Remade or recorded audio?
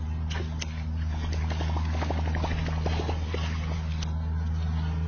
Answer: recorded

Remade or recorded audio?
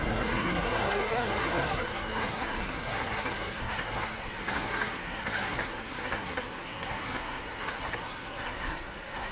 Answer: remade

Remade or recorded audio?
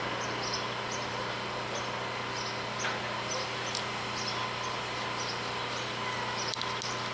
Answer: recorded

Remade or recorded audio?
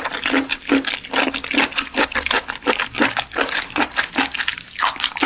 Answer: recorded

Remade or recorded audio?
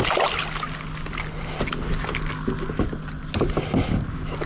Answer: recorded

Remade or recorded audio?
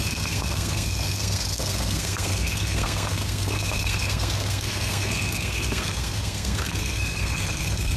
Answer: remade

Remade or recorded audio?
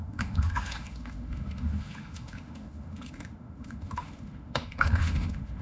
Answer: remade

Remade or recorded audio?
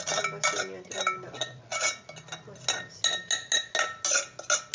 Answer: recorded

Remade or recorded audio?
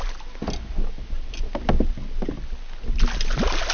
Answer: recorded